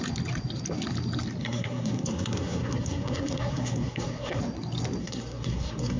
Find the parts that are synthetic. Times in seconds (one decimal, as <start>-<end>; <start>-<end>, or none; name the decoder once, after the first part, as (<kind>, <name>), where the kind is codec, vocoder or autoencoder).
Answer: 1.4-4.4 (codec, SNAC); 5.0-6.0